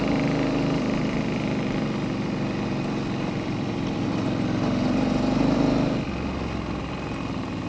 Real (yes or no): yes